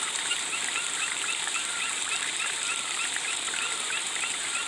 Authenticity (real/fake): fake